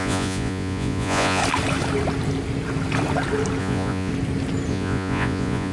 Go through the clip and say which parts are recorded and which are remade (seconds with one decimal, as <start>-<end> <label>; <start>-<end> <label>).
0.0-1.4 remade; 1.4-3.6 recorded; 3.6-4.1 remade; 4.1-4.7 recorded; 4.7-5.7 remade